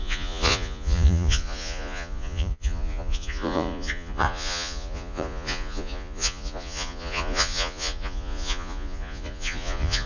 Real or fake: fake